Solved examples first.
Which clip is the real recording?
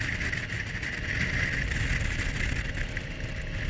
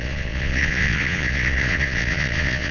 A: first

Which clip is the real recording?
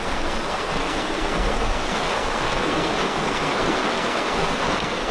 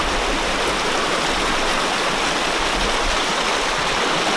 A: second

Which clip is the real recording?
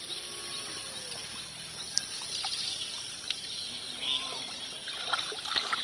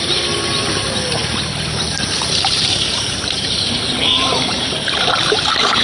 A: first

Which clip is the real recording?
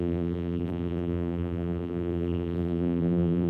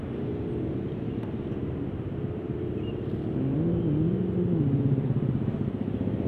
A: second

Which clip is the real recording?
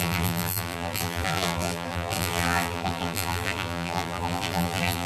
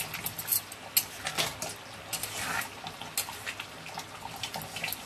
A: second